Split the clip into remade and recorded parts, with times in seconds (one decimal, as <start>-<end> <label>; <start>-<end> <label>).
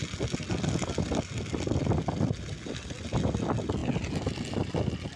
0.0-5.2 recorded